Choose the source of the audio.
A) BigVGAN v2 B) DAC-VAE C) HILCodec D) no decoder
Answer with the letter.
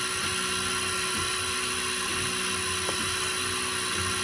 D